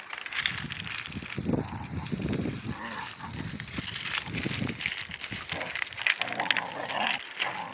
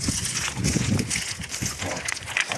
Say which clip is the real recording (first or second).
first